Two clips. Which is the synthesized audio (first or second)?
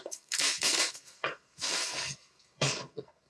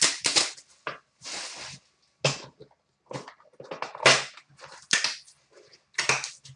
first